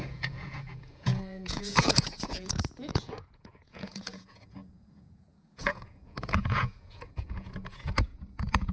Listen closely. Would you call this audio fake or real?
fake